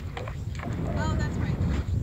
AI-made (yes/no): no